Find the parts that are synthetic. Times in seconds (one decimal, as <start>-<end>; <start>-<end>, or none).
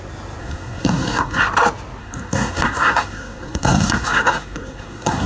0.4-1.4; 2.0-5.3